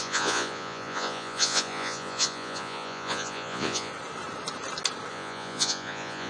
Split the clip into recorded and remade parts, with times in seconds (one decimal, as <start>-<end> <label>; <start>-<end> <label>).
0.0-3.9 remade; 3.9-5.1 recorded; 5.1-6.3 remade